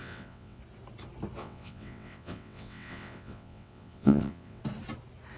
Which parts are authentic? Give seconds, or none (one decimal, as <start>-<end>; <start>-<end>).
0.6-1.4; 4.6-5.4